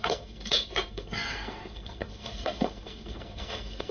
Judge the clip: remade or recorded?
remade